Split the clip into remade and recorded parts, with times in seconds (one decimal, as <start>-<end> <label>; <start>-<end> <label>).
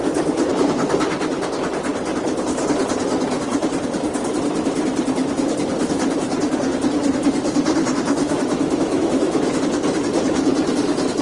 0.0-8.2 recorded; 8.2-9.6 remade; 9.6-11.2 recorded